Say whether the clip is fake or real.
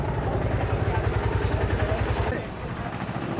real